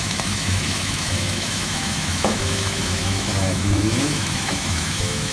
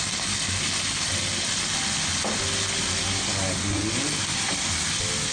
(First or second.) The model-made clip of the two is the first